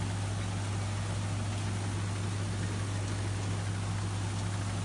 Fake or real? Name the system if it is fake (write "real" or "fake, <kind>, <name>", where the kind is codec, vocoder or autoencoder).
real